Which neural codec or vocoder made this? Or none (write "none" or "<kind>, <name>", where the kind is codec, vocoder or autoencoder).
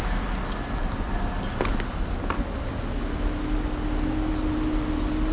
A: none